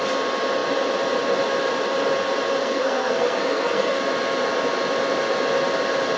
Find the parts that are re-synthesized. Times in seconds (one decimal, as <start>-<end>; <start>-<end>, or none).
2.6-4.0